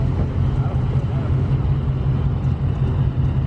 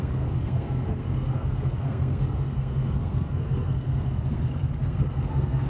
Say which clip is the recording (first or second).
first